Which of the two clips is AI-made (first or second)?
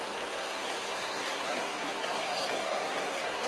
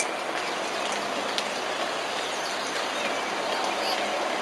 first